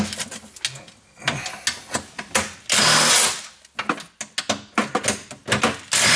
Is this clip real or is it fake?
real